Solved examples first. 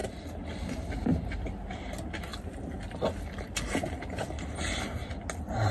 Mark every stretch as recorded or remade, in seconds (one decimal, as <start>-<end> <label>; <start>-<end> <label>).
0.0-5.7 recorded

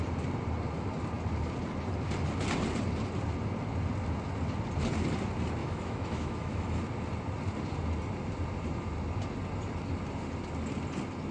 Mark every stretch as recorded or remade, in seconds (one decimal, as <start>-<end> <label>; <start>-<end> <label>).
0.0-5.6 recorded; 5.6-6.8 remade; 6.8-11.3 recorded

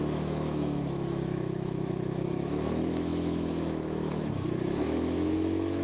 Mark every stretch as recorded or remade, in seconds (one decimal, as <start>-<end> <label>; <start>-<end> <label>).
0.0-5.8 remade